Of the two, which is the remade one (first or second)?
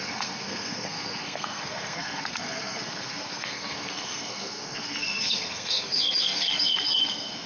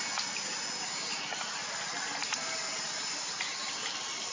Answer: first